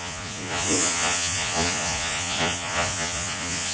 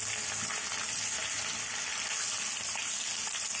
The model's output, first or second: first